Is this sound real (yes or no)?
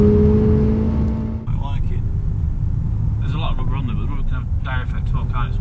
yes